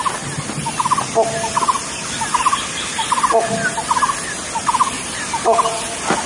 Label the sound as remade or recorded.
recorded